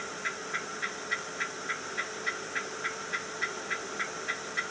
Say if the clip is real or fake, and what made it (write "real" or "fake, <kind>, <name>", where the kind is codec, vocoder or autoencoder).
fake, vocoder, BigVGAN v2